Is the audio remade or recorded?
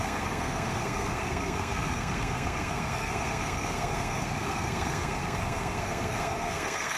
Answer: remade